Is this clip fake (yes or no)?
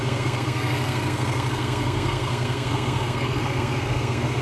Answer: yes